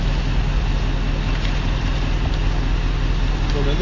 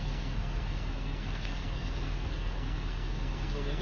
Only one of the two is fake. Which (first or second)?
second